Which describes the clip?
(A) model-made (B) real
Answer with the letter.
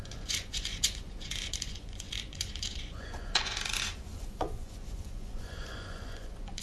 A